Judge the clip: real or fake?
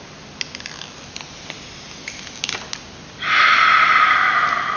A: real